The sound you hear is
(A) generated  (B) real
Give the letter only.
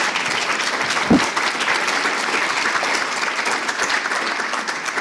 B